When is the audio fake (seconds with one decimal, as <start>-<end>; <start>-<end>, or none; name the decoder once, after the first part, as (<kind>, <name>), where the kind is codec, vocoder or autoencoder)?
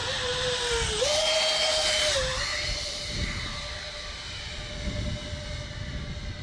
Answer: 0.0-0.6 (vocoder, BigVGAN v2); 2.5-4.6